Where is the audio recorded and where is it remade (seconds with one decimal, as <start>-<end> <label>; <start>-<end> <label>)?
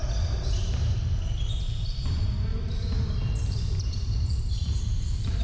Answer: 0.0-5.4 recorded